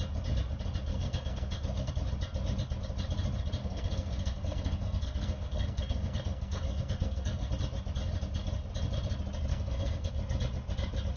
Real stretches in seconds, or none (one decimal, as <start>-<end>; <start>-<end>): 0.0-0.9; 1.9-3.6; 7.5-9.5; 10.1-11.2